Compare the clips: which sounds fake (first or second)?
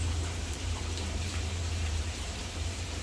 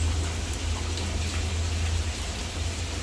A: first